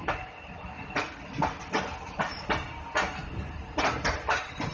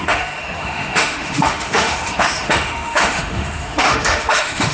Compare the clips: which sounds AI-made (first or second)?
second